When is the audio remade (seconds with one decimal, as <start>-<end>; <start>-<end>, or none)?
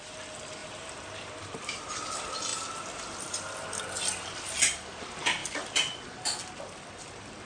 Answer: 0.6-1.9